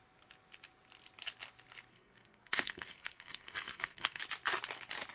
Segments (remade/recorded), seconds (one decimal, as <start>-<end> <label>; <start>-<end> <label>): 0.0-1.9 recorded; 1.9-4.2 remade; 4.2-5.1 recorded